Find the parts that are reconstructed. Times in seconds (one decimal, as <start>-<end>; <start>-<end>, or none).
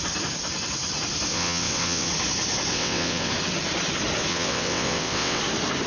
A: 1.3-2.1; 2.7-3.3; 4.3-5.4